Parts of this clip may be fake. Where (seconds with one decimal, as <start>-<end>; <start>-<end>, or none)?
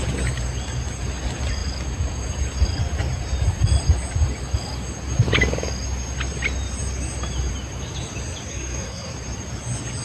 8.5-9.1